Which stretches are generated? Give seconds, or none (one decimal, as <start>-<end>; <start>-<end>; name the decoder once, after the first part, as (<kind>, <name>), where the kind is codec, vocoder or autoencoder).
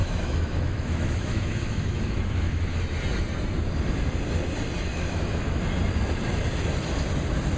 0.0-2.8 (autoencoder, DAC-VAE); 4.9-5.6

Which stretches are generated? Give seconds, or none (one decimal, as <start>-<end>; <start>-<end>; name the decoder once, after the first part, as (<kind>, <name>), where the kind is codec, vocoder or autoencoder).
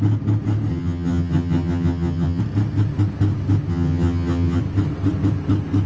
0.7-2.4 (vocoder, HiFi-GAN); 3.7-4.6